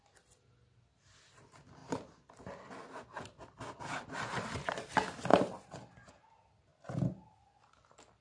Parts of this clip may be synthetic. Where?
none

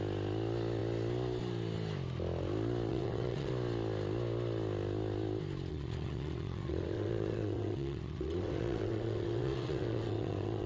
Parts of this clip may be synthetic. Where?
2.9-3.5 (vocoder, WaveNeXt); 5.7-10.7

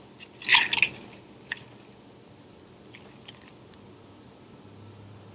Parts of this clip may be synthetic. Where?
none

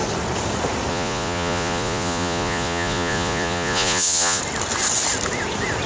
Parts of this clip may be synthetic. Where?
0.9-4.4 (vocoder, Vocos)

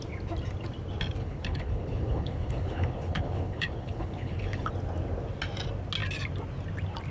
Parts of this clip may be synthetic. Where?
1.2-4.7 (codec, HILCodec)